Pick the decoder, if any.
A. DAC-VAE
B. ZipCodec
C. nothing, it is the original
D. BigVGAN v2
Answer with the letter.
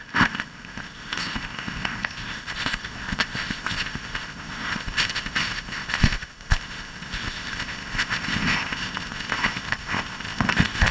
B